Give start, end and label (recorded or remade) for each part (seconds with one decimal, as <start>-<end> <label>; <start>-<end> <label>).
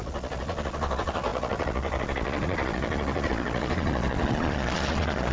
0.0-5.3 remade